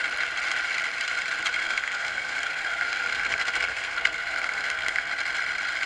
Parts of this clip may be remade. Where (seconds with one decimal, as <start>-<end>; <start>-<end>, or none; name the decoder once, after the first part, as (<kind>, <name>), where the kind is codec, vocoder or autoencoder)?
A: 1.6-5.1 (codec, SNAC)